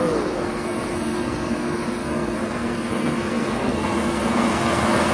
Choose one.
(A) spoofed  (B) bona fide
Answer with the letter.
A